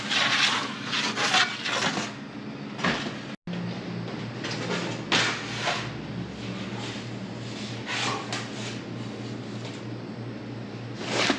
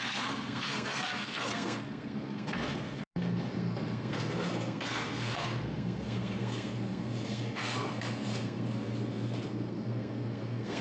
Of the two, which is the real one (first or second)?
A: first